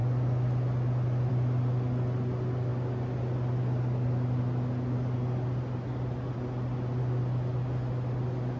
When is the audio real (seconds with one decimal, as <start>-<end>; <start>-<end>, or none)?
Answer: 0.0-8.6